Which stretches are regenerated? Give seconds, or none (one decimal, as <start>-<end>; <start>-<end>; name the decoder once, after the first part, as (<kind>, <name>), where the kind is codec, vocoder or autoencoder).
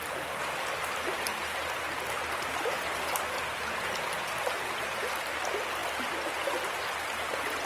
none